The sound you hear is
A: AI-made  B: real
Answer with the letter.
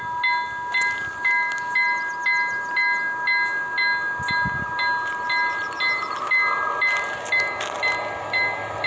B